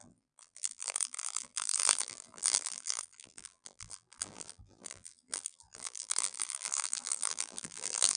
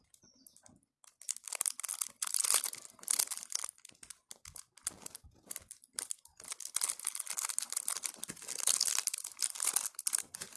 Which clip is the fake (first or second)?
first